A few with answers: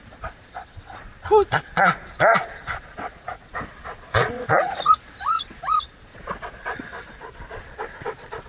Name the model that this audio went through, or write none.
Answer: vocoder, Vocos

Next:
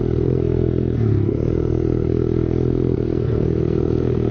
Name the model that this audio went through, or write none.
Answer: codec, SNAC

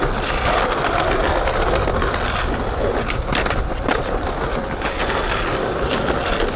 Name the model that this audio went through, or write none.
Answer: none